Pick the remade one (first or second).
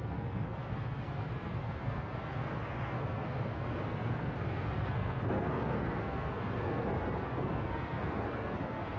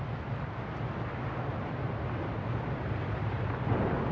first